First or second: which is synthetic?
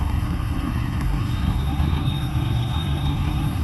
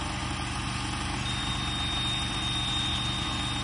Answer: first